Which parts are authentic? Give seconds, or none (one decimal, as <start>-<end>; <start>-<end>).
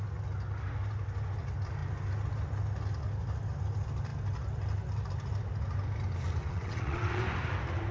0.0-6.4; 7.2-7.9